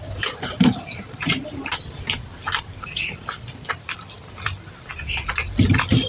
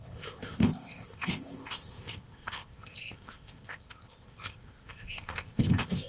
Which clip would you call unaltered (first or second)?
first